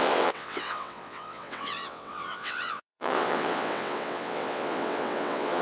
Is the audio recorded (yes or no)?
no